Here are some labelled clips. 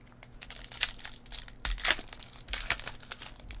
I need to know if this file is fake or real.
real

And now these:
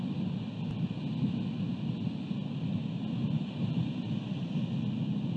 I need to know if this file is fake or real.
real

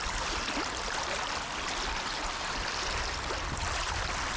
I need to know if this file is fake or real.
real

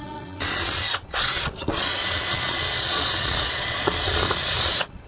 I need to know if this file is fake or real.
fake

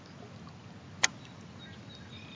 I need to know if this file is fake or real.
real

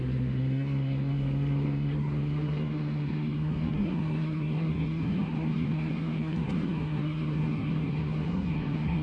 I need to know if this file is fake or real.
fake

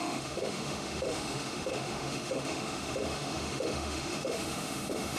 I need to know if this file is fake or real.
fake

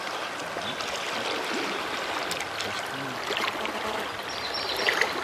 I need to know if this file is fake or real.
real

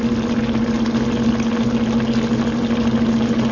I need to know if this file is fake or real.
real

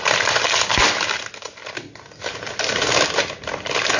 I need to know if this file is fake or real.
real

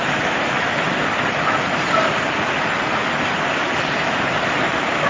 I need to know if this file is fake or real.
real